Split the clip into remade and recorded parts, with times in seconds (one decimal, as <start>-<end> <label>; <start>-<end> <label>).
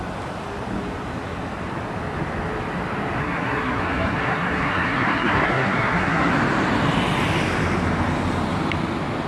0.0-3.2 recorded; 3.2-6.3 remade; 6.3-9.3 recorded